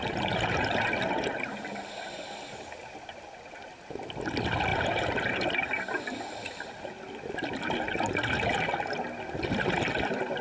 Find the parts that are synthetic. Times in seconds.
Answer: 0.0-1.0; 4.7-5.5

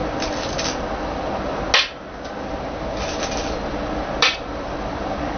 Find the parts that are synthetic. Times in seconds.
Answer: none

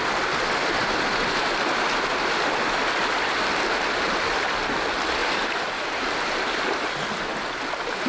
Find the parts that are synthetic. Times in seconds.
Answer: 5.2-6.9

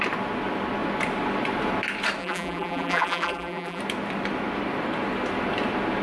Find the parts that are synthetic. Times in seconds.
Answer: 2.2-3.8

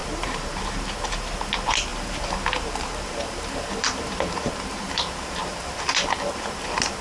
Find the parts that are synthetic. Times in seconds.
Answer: 0.0-0.6; 1.9-6.1

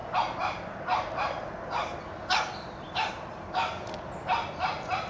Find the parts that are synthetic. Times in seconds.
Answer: none